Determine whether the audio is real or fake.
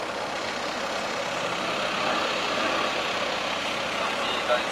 real